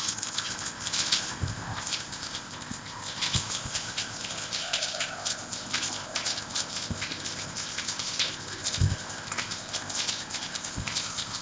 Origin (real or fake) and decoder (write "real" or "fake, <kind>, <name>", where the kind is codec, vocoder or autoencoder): fake, codec, ZipCodec